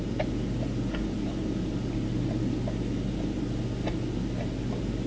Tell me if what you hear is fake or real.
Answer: real